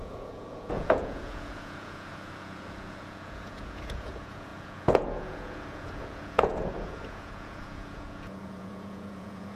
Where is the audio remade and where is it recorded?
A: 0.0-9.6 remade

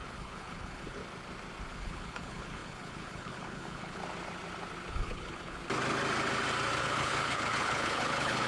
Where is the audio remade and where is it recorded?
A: 0.0-1.0 remade; 1.0-1.7 recorded; 1.7-4.0 remade; 4.0-4.9 recorded; 4.9-5.6 remade; 5.6-6.8 recorded; 6.8-8.5 remade

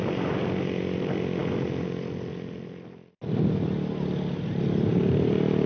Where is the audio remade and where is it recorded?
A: 0.0-4.9 recorded; 4.9-5.7 remade

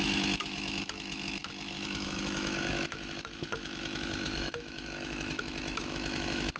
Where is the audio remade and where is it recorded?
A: 0.0-6.6 remade